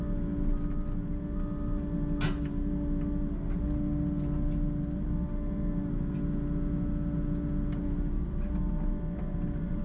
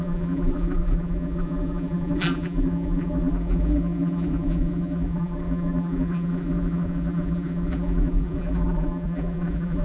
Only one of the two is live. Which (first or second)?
first